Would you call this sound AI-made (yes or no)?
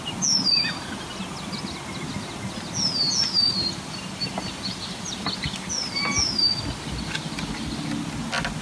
no